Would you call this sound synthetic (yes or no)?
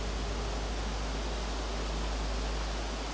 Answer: no